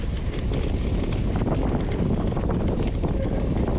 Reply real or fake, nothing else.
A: real